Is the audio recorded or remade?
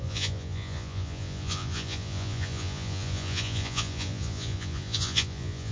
remade